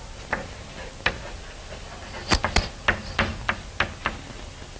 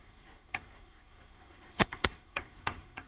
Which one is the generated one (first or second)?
second